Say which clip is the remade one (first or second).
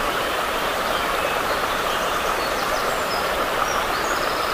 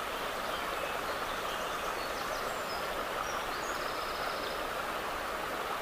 first